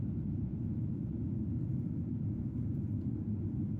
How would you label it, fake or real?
fake